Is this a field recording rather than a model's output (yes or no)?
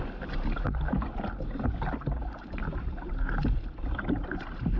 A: yes